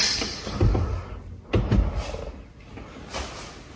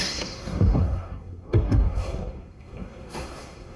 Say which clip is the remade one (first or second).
second